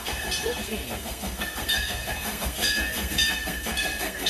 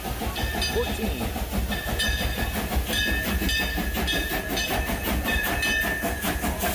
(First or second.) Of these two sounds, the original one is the second